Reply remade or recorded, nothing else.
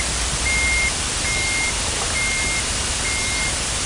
recorded